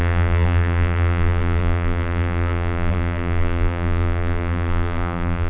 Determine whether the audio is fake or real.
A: fake